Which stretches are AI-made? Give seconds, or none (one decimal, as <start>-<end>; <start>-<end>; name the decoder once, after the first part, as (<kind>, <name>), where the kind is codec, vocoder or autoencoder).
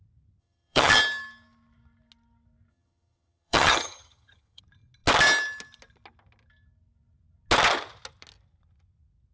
0.4-1.0 (vocoder, HiFi-GAN); 2.7-4.6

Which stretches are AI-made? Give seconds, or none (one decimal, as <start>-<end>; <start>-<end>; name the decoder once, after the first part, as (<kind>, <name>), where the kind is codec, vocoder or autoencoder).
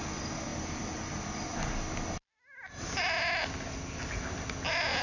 none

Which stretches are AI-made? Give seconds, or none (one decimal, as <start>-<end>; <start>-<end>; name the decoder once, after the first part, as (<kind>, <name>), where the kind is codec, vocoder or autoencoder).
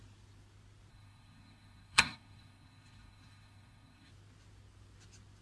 0.9-4.1 (codec, SNAC)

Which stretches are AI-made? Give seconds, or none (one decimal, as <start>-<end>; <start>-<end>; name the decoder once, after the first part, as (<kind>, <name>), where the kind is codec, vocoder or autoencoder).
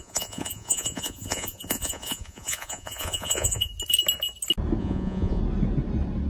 0.0-3.7 (vocoder, Vocos); 4.8-5.4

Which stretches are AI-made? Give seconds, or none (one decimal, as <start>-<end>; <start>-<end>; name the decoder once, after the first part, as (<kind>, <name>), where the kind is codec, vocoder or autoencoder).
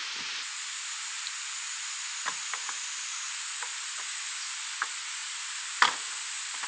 none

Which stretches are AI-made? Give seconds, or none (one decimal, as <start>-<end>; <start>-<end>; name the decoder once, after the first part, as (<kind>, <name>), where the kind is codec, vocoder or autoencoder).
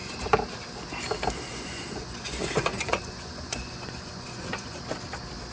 1.5-4.8 (vocoder, Vocos)